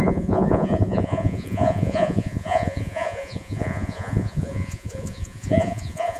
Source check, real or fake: fake